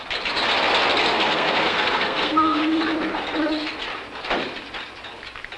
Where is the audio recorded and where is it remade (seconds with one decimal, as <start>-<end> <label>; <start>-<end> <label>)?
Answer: 0.0-1.1 recorded; 1.1-2.8 remade; 2.8-5.6 recorded